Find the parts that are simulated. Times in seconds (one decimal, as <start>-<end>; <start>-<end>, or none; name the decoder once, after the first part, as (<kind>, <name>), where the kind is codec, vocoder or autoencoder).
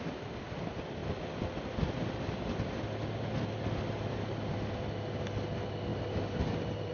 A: 5.9-6.9 (vocoder, BigVGAN v2)